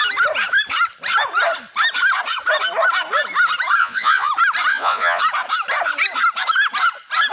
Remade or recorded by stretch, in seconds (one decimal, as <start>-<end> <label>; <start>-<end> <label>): 0.0-3.8 recorded; 3.8-4.3 remade; 4.3-4.7 recorded; 4.7-5.2 remade; 5.2-7.3 recorded